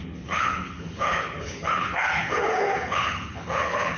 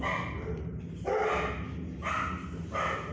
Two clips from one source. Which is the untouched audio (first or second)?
second